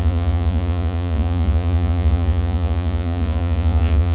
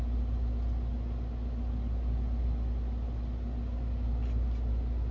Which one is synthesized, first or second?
first